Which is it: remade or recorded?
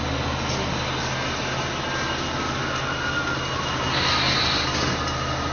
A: recorded